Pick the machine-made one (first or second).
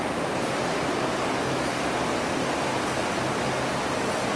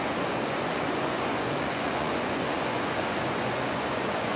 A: second